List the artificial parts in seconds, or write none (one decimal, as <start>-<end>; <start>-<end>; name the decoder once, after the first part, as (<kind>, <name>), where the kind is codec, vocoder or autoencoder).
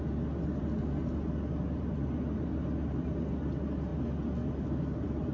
none